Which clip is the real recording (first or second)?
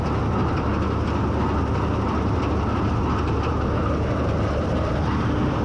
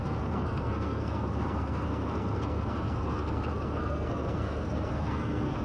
first